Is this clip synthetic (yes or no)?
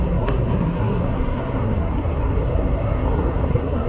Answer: yes